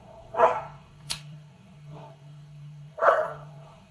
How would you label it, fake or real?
fake